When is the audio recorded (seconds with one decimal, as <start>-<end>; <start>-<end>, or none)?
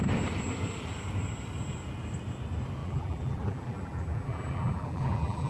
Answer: 0.0-2.8